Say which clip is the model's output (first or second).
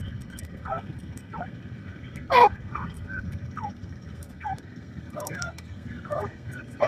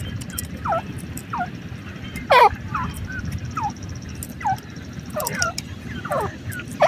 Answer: first